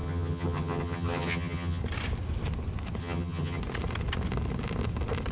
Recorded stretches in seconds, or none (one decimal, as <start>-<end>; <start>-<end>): 1.8-3.0; 3.6-5.3